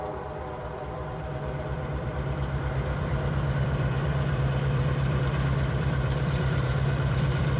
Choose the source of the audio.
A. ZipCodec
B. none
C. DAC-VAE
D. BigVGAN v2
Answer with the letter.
D